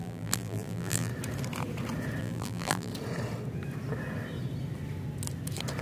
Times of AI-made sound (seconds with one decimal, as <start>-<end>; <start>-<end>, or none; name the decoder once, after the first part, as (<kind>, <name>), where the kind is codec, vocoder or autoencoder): 0.0-1.1 (vocoder, BigVGAN v2); 2.2-2.9